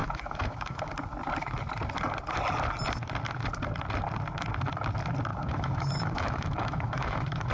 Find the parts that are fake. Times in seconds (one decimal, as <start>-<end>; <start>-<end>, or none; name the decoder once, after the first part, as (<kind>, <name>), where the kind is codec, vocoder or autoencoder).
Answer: 0.0-0.9 (autoencoder, DAC-VAE); 5.3-7.5